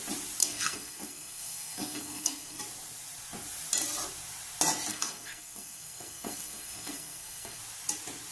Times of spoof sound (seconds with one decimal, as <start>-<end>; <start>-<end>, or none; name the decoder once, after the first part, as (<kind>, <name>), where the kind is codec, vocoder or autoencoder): 0.4-2.6 (codec, SNAC); 4.9-7.6